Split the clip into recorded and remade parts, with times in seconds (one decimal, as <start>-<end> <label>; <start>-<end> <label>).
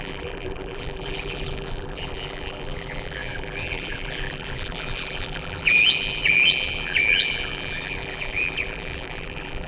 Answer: 0.0-9.7 remade